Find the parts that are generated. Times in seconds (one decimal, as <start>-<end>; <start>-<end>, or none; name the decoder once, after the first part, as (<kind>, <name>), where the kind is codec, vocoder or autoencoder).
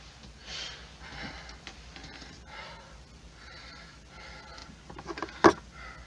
none